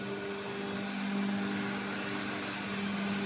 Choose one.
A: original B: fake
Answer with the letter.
A